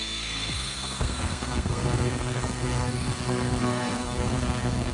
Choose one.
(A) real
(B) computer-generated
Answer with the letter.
B